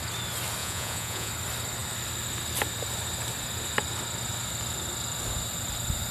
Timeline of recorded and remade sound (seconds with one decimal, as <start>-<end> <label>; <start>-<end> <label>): 0.0-0.6 recorded; 0.6-1.3 remade; 1.3-6.1 recorded